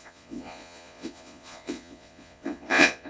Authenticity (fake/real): fake